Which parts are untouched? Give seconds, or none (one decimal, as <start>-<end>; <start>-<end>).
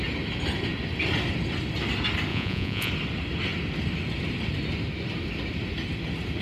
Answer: 0.0-2.3; 2.9-6.4